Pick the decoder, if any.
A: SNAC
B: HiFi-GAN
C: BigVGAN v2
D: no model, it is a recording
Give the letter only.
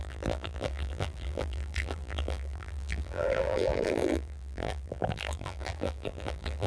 C